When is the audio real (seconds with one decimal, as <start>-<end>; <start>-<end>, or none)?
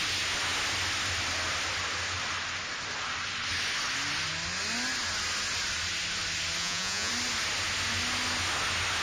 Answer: 0.0-6.6; 7.1-9.0